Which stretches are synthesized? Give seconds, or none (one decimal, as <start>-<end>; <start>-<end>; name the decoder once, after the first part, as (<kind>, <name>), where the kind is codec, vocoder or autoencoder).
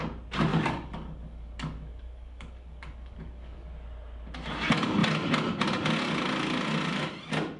0.5-3.7 (codec, DAC)